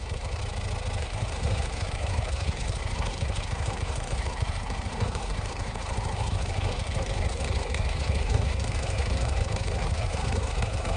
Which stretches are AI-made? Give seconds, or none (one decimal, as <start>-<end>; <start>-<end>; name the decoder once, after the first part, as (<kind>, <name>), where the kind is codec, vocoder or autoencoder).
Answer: 0.0-0.4 (codec, SNAC); 1.0-11.0